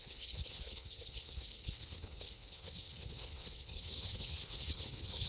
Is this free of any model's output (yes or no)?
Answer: no